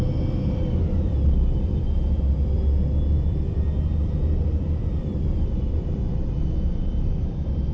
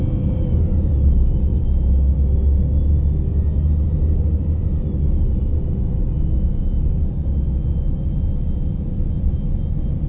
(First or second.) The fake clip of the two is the first